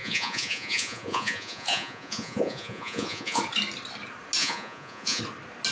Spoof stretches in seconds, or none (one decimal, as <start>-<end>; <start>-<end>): 0.0-3.4; 4.4-5.2